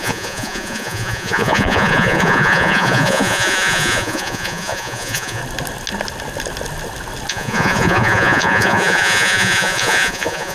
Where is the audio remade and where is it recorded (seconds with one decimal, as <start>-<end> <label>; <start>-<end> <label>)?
0.0-5.4 remade; 5.4-7.3 recorded; 7.3-10.5 remade